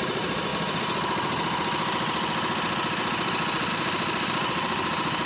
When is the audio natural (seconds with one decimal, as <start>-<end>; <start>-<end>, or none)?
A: 0.5-3.7

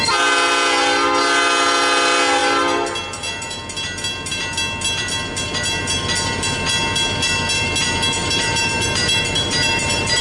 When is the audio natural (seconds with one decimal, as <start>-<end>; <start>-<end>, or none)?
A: 0.0-8.2